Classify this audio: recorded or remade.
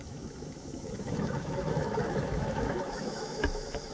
remade